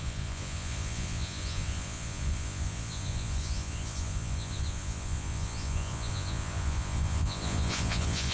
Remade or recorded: remade